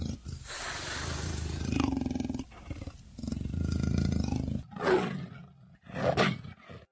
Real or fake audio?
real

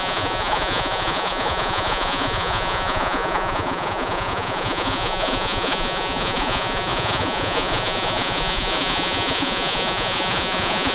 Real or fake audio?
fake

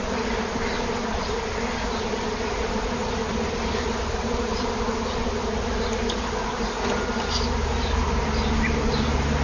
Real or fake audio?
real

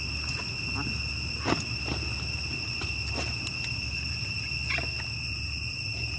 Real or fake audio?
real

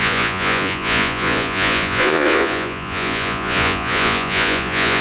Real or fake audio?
fake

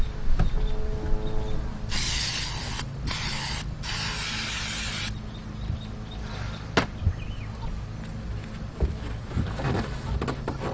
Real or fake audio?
real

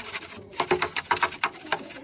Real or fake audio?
real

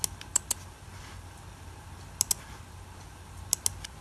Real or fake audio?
real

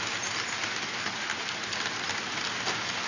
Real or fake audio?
real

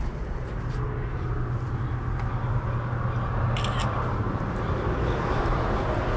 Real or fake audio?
real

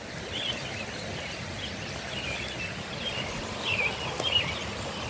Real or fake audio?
real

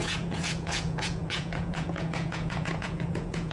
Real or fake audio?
fake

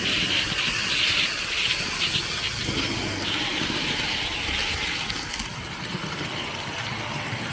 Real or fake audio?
real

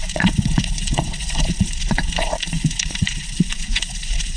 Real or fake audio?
fake